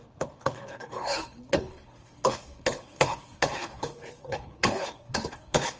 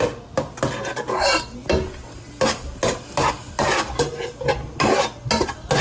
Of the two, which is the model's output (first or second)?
first